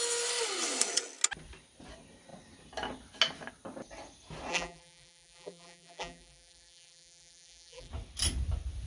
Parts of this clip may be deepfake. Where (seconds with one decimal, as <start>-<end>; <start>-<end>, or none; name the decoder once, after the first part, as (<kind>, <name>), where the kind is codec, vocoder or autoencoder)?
4.5-7.9 (vocoder, BigVGAN v2)